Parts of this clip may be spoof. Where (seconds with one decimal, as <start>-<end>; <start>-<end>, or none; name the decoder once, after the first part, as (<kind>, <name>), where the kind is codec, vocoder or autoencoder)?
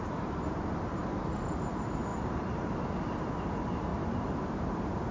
2.1-2.8 (vocoder, BigVGAN v2); 3.9-5.1